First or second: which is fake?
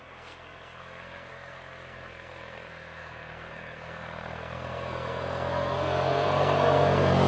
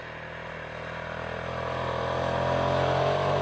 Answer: first